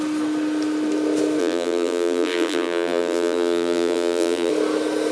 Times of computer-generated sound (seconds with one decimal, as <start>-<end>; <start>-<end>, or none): 1.4-4.5